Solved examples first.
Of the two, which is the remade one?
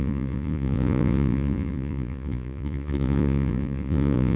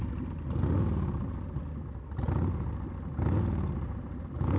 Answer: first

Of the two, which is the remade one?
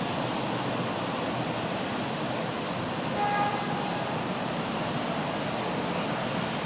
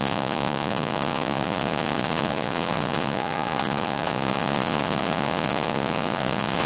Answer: second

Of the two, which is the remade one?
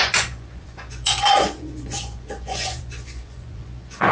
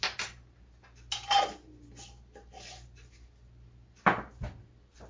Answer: first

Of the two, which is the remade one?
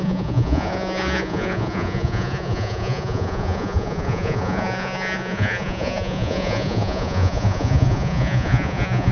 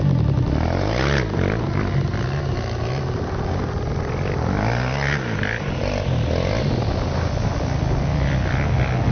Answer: first